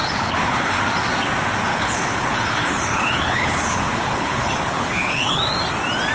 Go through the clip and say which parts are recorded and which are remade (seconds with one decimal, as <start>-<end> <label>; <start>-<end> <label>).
0.0-0.8 remade; 0.8-1.7 recorded; 1.7-5.4 remade; 5.4-6.1 recorded